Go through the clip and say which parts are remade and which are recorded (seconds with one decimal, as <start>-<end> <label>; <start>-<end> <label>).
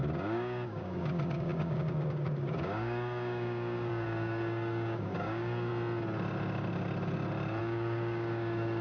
0.0-5.7 remade; 5.7-7.6 recorded; 7.6-8.8 remade